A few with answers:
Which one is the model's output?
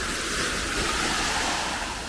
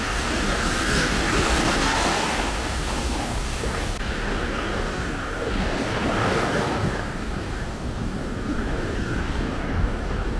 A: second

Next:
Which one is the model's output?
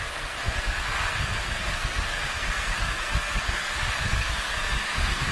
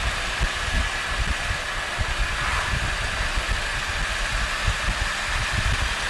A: first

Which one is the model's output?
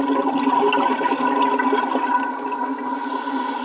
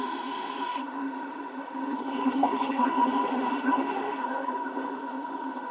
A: second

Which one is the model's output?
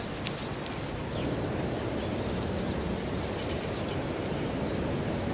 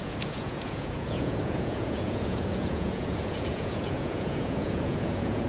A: second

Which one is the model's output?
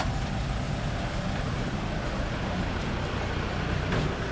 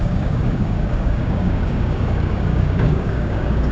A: second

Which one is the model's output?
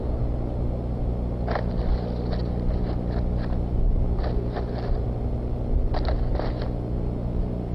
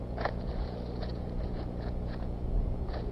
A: second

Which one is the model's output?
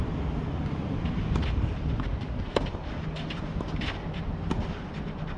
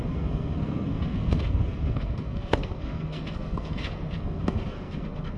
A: second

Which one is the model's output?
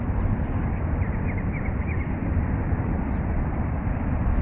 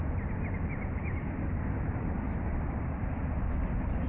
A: first